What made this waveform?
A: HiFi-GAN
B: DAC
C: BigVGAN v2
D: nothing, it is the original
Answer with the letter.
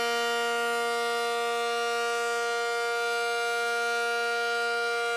D